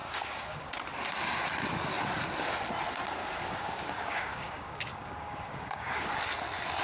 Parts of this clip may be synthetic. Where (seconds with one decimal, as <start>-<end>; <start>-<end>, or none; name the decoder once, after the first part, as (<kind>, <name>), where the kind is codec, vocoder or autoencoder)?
0.0-0.7 (codec, DAC); 3.2-6.1